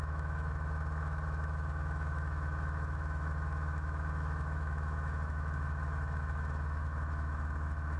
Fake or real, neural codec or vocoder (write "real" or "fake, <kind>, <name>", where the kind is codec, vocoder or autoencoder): fake, autoencoder, DAC-VAE